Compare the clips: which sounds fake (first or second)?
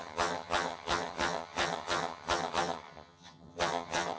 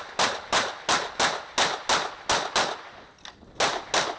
first